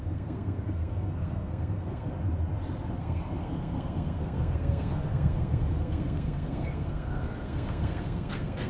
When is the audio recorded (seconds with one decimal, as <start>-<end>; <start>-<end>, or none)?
2.1-3.0

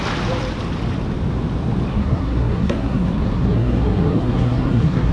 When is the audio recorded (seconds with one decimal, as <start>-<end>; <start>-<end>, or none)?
0.0-1.9

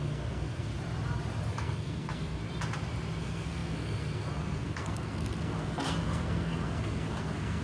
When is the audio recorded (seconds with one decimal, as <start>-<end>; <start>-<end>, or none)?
0.7-1.5; 2.4-3.2

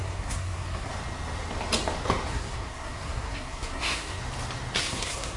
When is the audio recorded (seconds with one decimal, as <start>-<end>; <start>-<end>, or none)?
0.9-2.3; 4.2-4.8

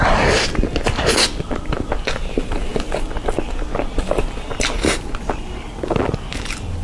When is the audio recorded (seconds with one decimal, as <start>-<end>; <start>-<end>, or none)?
0.0-6.8

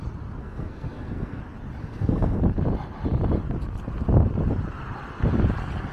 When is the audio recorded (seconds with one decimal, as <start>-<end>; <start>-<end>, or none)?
0.0-0.4; 1.4-1.8; 2.4-5.9

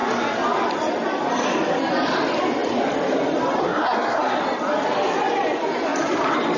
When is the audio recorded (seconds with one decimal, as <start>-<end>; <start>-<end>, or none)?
0.0-3.6; 4.4-6.6

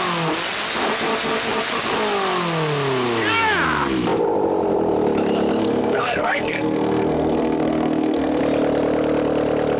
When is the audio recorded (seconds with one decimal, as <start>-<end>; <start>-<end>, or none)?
0.0-5.5; 8.4-9.8